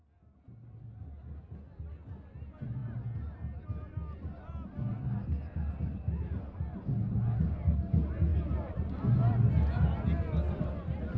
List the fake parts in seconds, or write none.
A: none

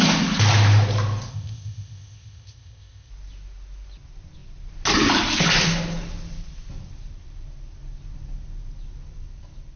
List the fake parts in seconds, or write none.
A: 1.3-3.1 (codec, ZipCodec)